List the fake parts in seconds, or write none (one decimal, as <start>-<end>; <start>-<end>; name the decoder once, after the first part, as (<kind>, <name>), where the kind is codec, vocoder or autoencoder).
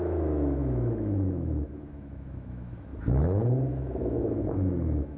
0.0-2.9 (autoencoder, DAC-VAE); 3.7-5.2